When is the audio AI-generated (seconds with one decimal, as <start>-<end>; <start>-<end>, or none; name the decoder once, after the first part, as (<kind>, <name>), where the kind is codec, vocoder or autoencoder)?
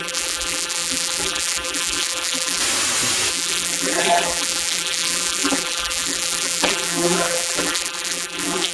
0.0-2.6 (vocoder, BigVGAN v2); 3.3-8.7